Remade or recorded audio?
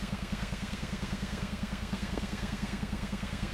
remade